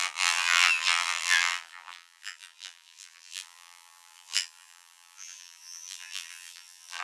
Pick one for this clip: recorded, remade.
remade